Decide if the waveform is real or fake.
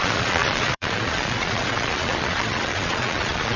fake